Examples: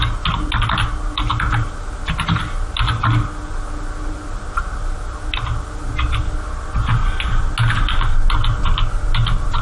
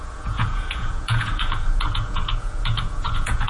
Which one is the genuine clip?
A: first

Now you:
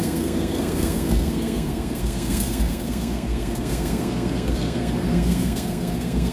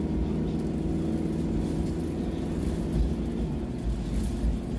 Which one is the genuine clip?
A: second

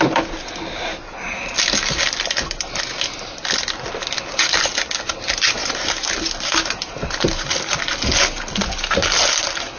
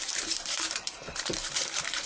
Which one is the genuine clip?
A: first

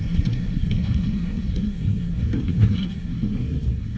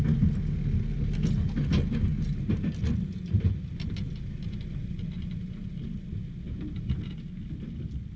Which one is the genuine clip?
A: second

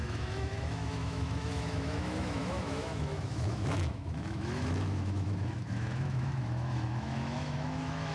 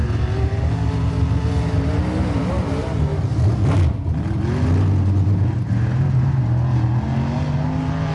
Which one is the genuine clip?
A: second